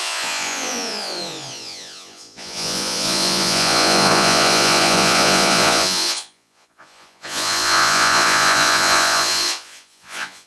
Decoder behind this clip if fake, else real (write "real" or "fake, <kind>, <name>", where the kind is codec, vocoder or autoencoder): fake, vocoder, Vocos